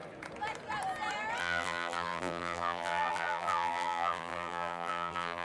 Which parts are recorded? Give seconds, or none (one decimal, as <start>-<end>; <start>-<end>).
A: 0.0-1.4